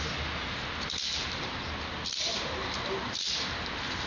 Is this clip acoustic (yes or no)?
yes